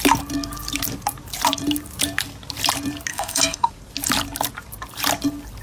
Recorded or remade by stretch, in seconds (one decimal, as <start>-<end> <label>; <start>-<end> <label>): 0.0-3.1 recorded; 3.1-3.7 remade; 3.7-5.6 recorded